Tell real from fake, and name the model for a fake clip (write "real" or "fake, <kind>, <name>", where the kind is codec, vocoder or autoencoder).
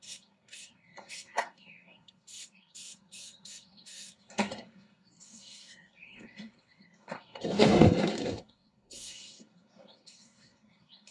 fake, codec, SNAC